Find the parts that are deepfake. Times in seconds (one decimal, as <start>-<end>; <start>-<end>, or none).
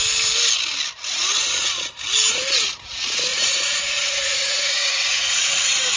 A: 3.3-5.4